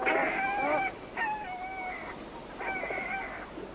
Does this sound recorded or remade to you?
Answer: recorded